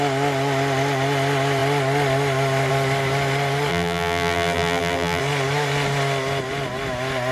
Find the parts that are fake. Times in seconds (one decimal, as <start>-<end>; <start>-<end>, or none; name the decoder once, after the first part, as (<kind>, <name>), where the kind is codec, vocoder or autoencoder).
3.7-5.2 (vocoder, BigVGAN v2)